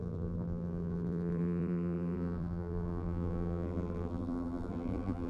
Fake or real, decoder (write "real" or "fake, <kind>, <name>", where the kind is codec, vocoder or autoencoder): fake, vocoder, BigVGAN v2